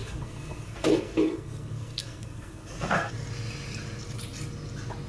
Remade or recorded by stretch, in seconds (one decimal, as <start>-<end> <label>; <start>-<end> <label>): 0.0-3.1 remade; 3.1-5.1 recorded